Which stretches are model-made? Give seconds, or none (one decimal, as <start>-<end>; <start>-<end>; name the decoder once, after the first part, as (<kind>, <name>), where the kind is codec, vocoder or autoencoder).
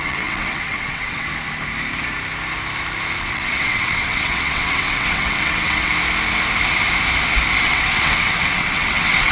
0.0-1.3 (vocoder, WaveNeXt); 3.2-5.9; 7.6-9.3